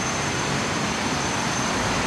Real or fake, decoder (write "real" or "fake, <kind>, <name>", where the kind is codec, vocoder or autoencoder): fake, vocoder, BigVGAN v2